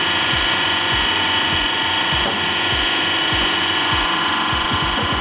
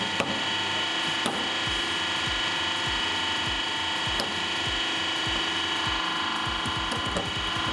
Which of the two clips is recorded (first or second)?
second